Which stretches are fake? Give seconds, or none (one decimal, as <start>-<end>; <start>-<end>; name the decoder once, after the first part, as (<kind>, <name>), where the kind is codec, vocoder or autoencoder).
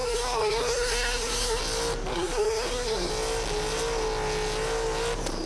0.0-1.6 (codec, SNAC); 2.1-3.1